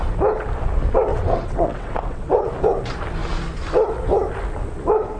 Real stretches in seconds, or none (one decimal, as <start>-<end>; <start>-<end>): 0.0-1.1; 2.5-5.2